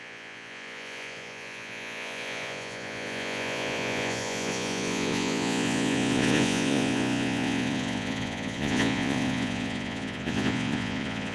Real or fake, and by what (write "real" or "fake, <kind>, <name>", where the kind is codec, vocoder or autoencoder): fake, vocoder, Vocos